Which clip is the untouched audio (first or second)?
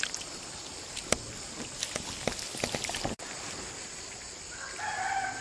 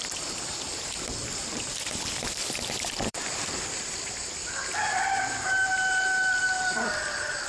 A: first